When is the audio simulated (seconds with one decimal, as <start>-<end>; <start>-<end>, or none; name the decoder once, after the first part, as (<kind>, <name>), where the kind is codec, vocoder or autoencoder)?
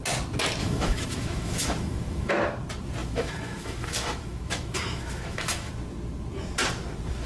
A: 0.6-2.3 (autoencoder, DAC-VAE); 3.0-5.7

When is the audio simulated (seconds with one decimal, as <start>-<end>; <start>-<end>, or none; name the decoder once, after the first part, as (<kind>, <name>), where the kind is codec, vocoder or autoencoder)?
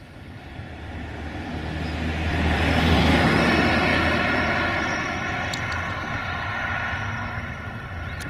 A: 2.3-3.0 (vocoder, BigVGAN v2); 6.2-8.3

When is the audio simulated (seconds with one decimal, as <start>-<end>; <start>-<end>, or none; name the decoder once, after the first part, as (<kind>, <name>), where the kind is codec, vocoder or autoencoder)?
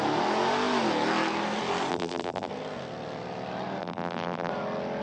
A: 1.9-2.5 (vocoder, BigVGAN v2); 3.8-4.5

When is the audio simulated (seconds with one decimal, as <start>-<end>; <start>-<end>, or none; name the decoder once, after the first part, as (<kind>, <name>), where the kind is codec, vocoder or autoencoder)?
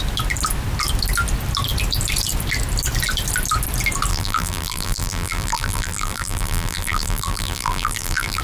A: 4.1-8.4 (vocoder, BigVGAN v2)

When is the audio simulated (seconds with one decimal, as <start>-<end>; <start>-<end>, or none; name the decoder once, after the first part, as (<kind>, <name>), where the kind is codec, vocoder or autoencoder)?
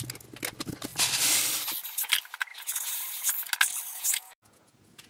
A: 2.5-3.3 (vocoder, Vocos); 3.9-5.1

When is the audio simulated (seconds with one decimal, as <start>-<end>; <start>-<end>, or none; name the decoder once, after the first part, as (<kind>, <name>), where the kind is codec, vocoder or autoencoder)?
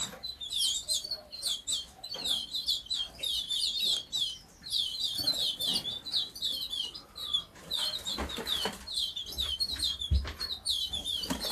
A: 0.0-5.7 (vocoder, BigVGAN v2); 6.6-11.5